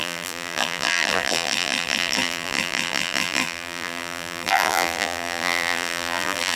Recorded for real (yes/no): no